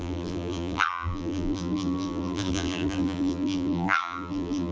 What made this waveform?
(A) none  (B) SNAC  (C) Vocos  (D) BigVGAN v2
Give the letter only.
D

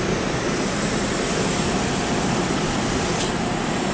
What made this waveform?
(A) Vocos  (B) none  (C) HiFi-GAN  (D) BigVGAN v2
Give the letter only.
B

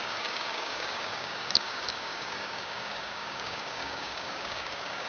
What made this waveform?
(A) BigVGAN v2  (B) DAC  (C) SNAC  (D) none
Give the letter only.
B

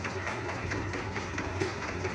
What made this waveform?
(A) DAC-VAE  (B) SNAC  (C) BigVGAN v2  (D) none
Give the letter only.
B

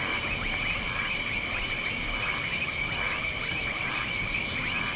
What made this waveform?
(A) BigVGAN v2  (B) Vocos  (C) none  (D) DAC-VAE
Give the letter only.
A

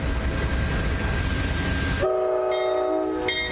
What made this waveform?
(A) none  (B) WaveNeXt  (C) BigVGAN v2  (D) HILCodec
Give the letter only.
A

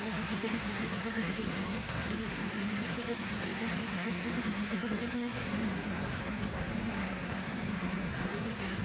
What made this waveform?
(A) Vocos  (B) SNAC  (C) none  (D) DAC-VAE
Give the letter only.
B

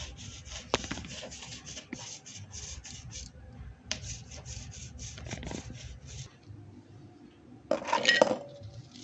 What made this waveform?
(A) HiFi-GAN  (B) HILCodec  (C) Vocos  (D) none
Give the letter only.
D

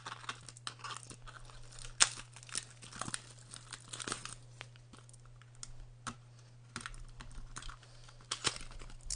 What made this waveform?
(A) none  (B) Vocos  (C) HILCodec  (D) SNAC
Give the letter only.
A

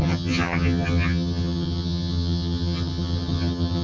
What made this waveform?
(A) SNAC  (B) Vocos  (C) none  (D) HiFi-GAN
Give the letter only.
D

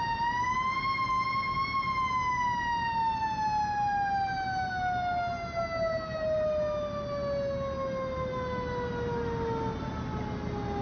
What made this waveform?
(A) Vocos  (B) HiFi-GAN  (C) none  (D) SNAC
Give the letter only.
C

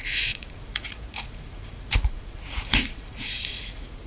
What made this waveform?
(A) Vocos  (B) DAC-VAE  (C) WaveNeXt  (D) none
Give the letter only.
A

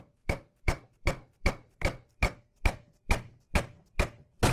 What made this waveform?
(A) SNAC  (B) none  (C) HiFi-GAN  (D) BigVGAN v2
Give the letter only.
D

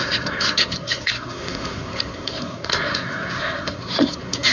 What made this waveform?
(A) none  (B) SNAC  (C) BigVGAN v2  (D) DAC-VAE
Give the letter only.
B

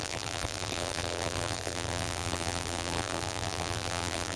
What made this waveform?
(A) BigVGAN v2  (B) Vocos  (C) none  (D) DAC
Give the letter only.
A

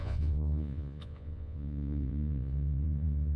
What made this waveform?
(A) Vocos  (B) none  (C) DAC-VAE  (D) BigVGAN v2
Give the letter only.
A